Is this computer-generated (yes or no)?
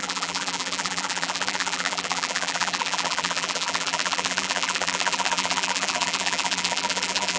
yes